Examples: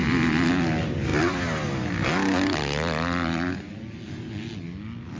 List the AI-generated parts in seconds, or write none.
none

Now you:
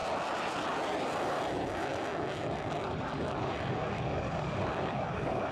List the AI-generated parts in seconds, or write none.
1.0-5.5 (codec, DAC)

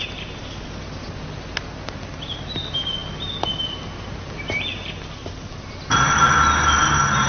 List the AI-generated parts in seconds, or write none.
none

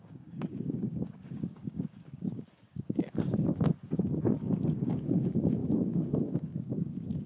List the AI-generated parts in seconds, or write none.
0.0-7.3 (codec, DAC)

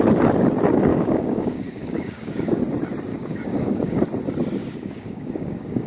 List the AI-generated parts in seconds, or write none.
0.9-2.6 (codec, DAC); 3.1-4.0; 4.6-5.9

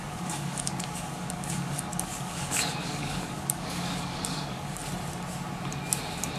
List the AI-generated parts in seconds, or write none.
0.0-4.8 (codec, DAC)